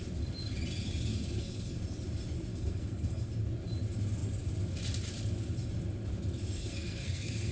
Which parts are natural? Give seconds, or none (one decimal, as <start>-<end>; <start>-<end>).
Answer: 0.0-1.1; 1.8-2.5; 3.3-6.6

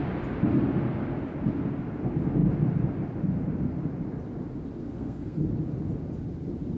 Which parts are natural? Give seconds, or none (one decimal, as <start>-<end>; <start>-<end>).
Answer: 0.0-4.8; 5.4-6.8